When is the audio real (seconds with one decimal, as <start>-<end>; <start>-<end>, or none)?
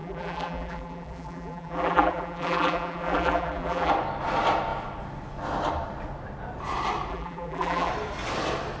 3.9-7.1; 7.9-8.8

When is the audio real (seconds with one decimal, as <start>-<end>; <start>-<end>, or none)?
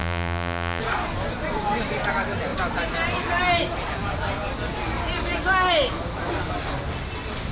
0.8-7.5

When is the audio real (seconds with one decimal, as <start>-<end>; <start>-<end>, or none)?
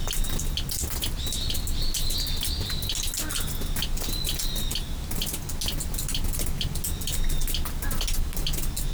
0.0-8.9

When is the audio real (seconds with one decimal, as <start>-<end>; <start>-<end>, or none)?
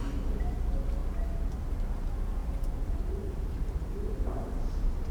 0.0-2.4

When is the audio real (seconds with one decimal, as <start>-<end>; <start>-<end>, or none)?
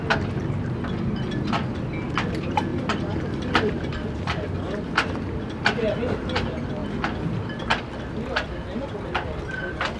0.0-2.7; 5.6-10.0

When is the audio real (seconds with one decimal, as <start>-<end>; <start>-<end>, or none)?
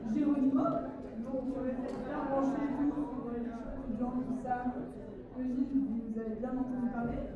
1.1-4.5; 4.9-6.1